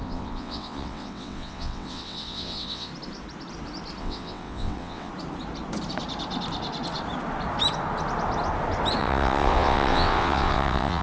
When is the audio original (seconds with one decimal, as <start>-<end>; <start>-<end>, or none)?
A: 2.9-4.0; 5.1-9.0